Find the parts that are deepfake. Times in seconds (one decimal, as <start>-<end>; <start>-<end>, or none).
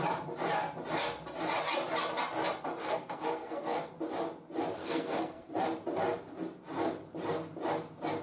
2.8-3.9; 4.8-5.5